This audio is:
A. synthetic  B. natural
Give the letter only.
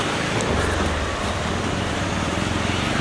B